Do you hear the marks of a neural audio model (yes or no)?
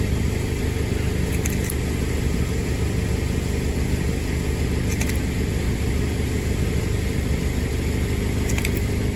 no